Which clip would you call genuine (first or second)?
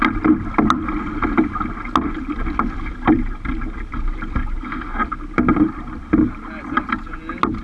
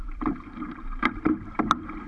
first